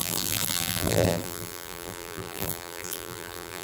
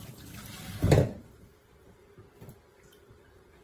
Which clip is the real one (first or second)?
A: second